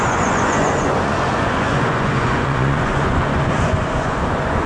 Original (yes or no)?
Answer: no